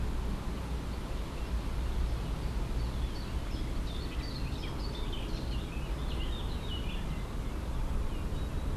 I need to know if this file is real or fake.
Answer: real